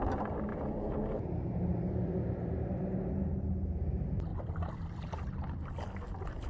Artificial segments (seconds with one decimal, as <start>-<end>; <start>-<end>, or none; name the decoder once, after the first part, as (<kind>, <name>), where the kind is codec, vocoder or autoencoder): 4.3-6.5 (vocoder, BigVGAN v2)